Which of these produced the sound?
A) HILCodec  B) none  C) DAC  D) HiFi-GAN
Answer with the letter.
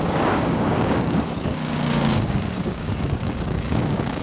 C